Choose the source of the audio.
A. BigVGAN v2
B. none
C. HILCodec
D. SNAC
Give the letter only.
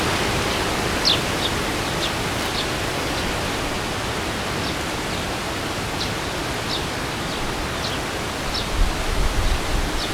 B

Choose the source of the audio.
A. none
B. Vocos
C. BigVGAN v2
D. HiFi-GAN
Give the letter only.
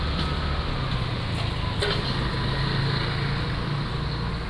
A